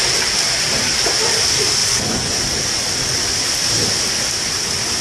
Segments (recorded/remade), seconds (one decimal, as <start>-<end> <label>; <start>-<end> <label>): 0.0-1.8 recorded; 1.8-2.4 remade; 2.4-5.0 recorded